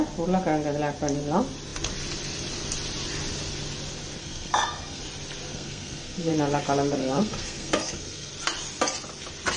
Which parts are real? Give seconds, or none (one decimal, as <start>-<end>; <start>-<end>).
0.0-4.2; 5.0-5.5; 6.3-7.0; 8.3-9.6